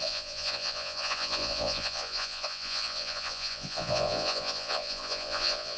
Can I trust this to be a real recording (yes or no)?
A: no